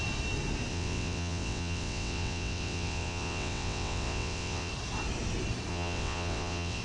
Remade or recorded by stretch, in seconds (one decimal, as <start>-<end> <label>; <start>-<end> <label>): 0.0-0.7 recorded; 0.7-4.7 remade; 4.7-5.7 recorded; 5.7-6.8 remade